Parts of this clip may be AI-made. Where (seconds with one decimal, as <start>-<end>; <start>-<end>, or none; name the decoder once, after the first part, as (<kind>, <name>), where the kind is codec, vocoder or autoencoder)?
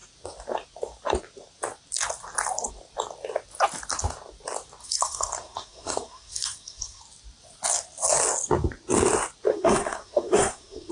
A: 4.8-7.0 (codec, SNAC); 9.5-10.9